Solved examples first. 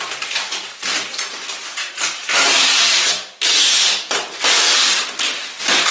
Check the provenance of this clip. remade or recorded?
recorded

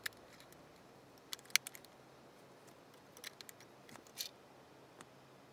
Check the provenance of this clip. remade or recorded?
recorded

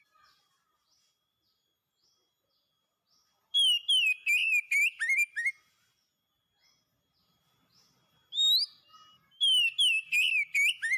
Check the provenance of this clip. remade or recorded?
recorded